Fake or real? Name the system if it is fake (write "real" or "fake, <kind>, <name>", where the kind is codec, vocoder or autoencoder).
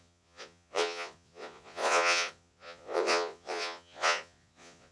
fake, vocoder, Vocos